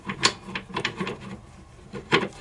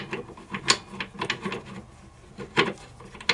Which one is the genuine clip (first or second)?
second